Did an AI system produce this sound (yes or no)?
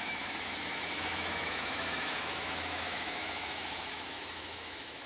yes